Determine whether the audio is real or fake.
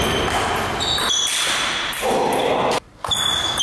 real